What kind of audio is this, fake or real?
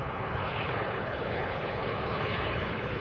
fake